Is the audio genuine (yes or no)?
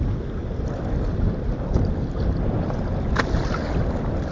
yes